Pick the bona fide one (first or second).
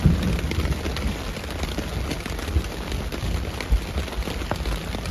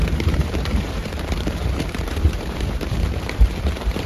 first